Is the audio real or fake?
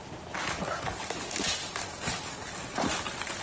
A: real